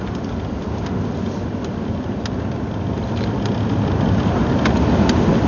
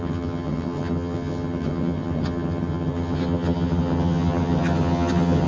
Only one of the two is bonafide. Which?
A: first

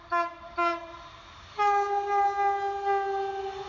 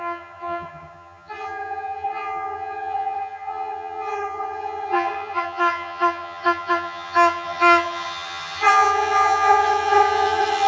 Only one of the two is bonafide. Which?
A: first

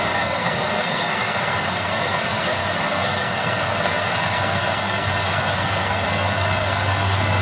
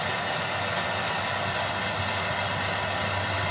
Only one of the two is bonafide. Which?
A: second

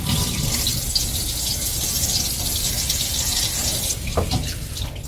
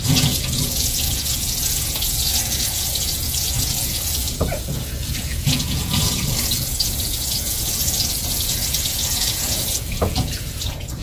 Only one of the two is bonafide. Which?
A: first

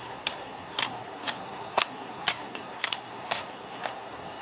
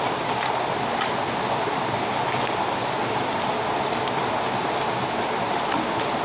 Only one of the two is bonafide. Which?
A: second